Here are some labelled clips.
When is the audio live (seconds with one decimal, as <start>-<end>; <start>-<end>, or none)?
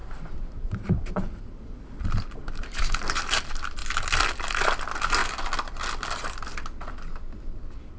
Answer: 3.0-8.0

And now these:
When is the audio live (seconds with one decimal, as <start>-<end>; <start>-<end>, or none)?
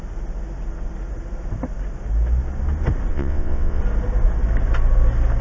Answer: 0.0-3.1; 3.8-5.4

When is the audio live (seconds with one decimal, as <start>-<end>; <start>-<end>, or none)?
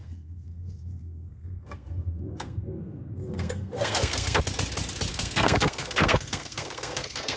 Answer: 4.4-5.1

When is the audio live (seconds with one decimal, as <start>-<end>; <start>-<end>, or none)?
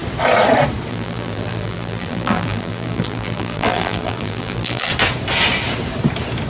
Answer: 0.0-0.9; 4.9-6.5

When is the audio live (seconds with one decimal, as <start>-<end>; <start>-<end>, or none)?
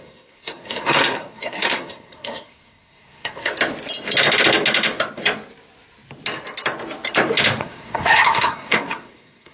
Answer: 3.5-7.6